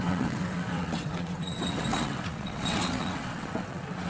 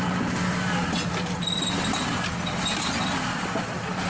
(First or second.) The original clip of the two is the second